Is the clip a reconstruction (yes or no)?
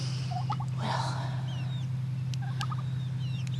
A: no